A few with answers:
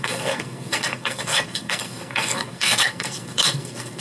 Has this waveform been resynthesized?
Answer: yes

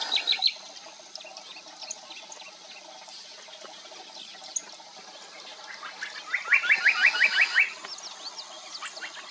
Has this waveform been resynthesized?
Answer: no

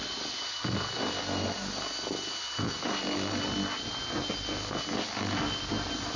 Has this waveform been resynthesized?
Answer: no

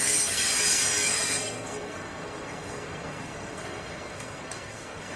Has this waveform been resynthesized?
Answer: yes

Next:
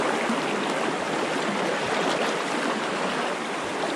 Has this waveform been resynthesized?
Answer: no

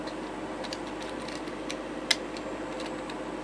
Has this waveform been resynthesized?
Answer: no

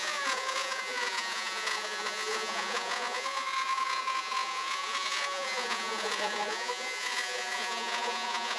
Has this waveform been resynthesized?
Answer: yes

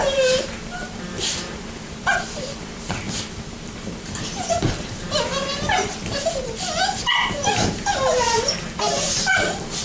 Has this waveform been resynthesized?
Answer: yes